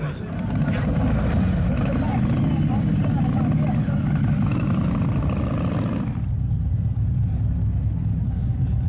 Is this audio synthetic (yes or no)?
no